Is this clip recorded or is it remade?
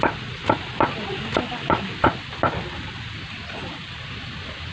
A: recorded